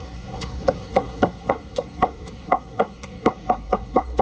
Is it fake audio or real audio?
fake